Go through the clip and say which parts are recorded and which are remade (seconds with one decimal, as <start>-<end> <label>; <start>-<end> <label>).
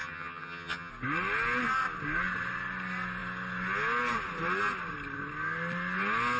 0.0-0.9 remade; 0.9-6.4 recorded